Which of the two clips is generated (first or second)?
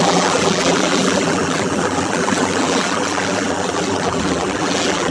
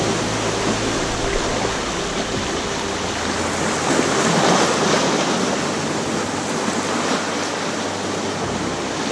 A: first